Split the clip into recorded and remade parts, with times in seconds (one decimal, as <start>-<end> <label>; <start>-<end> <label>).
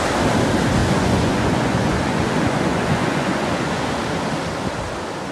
0.0-0.8 recorded; 0.8-4.0 remade; 4.0-5.3 recorded